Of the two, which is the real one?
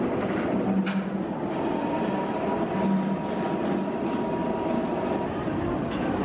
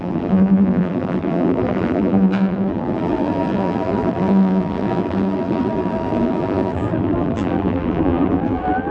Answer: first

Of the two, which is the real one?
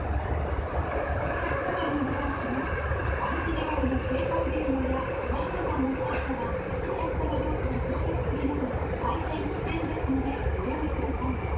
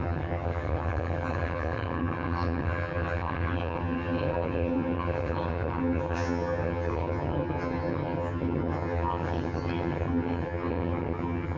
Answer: first